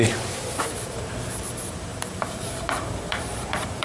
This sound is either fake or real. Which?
fake